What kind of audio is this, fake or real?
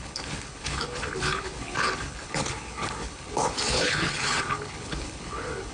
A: fake